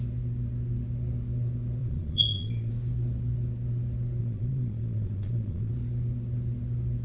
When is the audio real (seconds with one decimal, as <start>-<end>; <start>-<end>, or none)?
0.0-1.8; 2.7-4.2; 5.7-7.0